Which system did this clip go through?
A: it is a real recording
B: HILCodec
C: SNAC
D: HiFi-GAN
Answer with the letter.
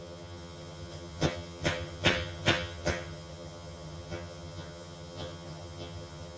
D